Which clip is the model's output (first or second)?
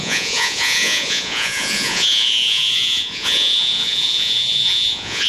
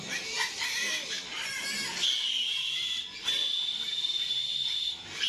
first